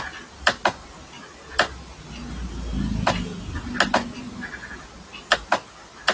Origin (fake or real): real